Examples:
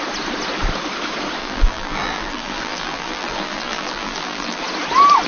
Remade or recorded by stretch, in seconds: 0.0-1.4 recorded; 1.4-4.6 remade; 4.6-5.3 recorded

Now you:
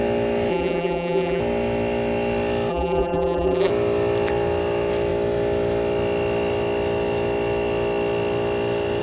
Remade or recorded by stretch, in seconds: 0.0-0.5 recorded; 0.5-1.4 remade; 1.4-2.7 recorded; 2.7-3.7 remade; 3.7-9.0 recorded

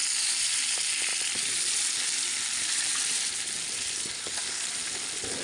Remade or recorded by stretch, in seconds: 0.0-5.4 recorded

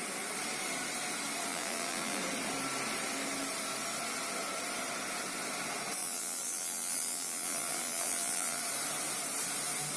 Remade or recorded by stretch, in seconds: 0.0-1.5 recorded; 1.5-2.2 remade; 2.2-6.0 recorded; 6.0-8.6 remade; 8.6-10.0 recorded

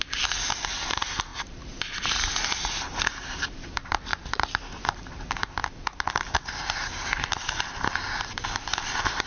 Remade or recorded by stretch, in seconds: 0.0-5.6 remade; 5.6-6.1 recorded; 6.1-9.3 remade